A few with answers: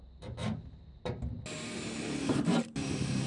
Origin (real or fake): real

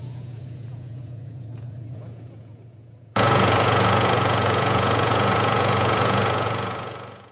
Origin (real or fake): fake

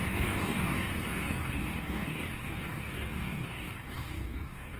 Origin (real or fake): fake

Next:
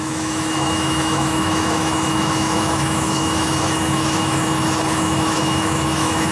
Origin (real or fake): fake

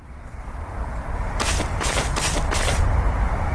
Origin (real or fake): fake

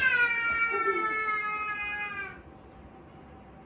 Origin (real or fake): real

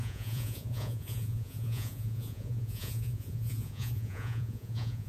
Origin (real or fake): fake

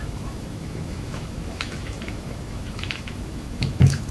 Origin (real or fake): fake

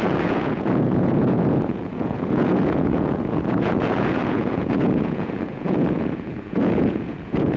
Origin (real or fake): fake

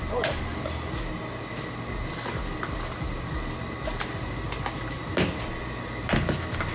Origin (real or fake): real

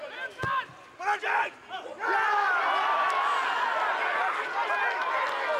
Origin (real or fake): real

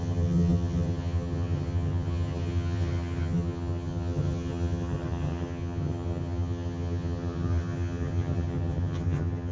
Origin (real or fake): fake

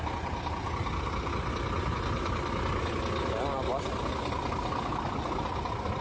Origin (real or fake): real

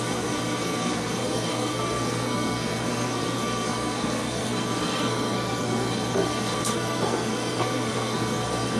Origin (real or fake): fake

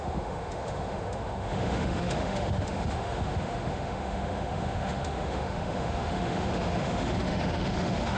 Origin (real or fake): fake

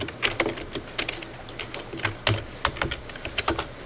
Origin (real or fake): real